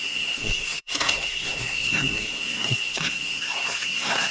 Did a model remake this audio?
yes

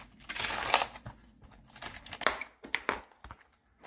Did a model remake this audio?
no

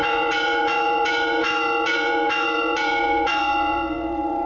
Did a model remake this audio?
yes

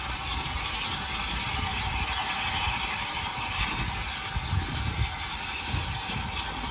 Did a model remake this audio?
no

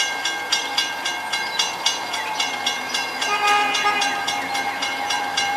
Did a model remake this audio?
yes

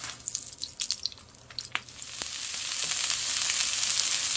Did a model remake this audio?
no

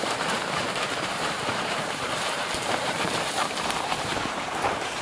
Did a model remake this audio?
yes